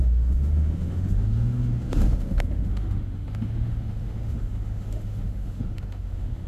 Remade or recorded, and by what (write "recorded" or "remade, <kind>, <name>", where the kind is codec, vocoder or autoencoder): remade, autoencoder, DAC-VAE